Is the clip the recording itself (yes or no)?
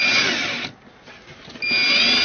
yes